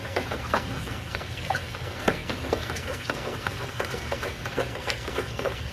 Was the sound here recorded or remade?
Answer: remade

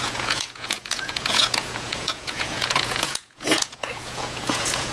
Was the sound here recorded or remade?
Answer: remade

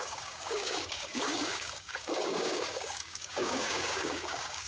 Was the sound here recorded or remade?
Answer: remade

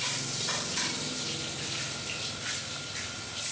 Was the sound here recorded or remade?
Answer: recorded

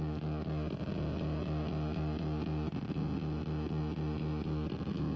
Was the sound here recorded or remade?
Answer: recorded